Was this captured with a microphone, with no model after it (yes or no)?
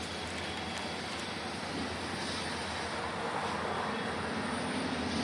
yes